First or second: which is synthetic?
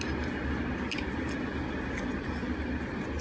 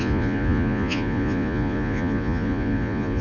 second